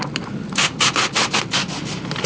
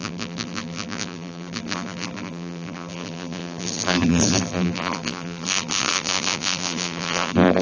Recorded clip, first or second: first